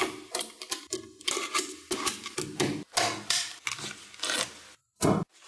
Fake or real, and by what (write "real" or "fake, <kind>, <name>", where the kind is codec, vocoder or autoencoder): real